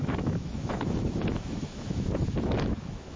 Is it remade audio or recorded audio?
remade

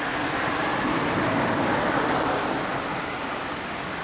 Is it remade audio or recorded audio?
recorded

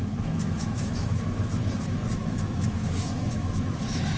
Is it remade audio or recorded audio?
remade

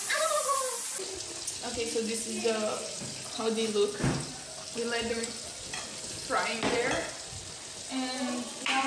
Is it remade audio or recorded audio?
recorded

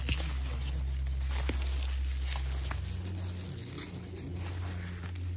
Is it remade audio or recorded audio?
recorded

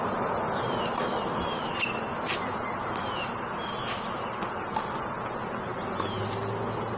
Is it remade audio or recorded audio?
recorded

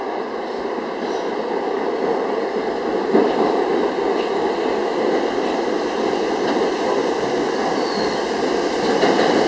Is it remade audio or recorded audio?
recorded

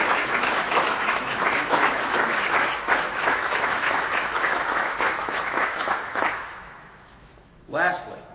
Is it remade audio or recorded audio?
remade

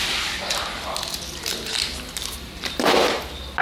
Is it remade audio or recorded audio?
recorded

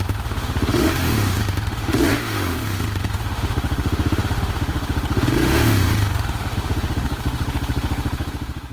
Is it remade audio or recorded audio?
remade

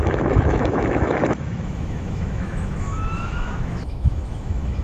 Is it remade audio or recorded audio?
remade